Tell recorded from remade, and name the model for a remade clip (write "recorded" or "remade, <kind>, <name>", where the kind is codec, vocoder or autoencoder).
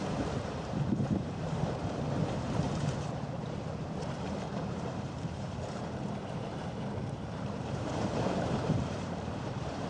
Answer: remade, vocoder, BigVGAN v2